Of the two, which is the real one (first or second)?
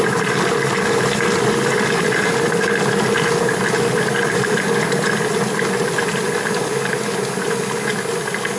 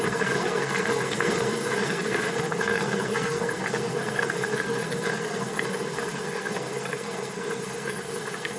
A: first